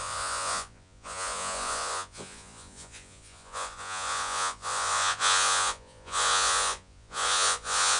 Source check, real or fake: fake